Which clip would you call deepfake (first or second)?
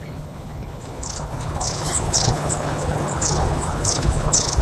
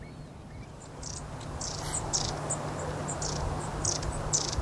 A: first